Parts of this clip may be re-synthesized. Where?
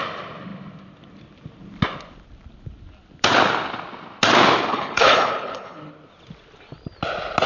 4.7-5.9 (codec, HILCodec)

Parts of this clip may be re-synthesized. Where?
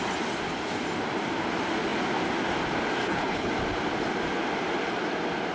3.0-3.5 (codec, HILCodec)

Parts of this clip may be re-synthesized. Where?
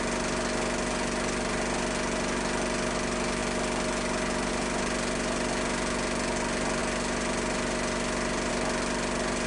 none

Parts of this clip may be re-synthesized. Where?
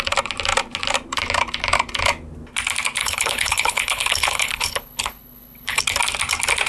3.0-5.8 (codec, HILCodec)